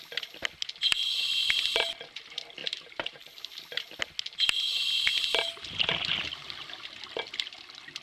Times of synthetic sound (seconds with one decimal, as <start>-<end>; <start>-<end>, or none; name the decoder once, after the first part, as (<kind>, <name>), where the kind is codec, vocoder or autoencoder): 2.6-3.8 (vocoder, BigVGAN v2)